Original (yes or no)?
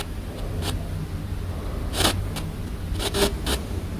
yes